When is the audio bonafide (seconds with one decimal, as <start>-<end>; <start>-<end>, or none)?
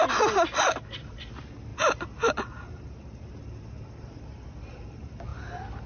0.0-1.7; 4.2-5.9